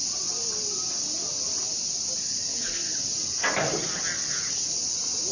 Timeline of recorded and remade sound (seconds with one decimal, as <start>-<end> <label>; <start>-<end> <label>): 0.0-5.3 recorded